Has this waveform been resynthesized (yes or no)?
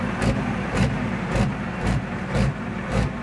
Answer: yes